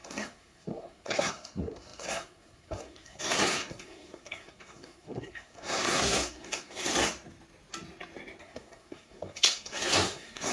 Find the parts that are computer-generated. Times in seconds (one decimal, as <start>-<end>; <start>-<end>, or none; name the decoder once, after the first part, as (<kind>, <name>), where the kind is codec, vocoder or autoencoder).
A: 0.0-6.9 (codec, SNAC); 8.4-10.5